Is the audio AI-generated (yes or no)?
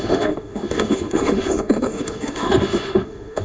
yes